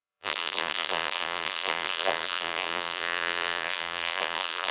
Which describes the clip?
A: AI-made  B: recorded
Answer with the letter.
A